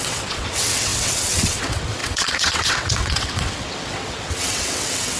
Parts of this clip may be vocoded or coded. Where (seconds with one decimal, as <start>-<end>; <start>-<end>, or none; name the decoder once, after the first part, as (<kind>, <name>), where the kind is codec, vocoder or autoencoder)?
0.0-5.2 (vocoder, WaveNeXt)